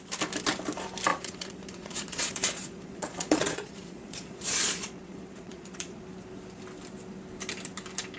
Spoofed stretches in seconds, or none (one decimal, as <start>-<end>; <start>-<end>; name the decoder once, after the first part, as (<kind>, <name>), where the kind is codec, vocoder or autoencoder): 1.1-6.0 (vocoder, Vocos)